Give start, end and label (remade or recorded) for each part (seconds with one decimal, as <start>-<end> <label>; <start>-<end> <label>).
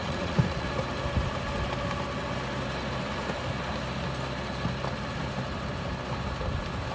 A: 0.0-0.7 remade; 0.7-6.9 recorded